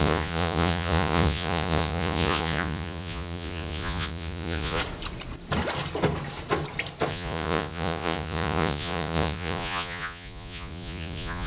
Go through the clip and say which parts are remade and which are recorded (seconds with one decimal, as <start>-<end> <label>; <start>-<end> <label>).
0.0-4.8 remade; 4.8-7.1 recorded; 7.1-11.5 remade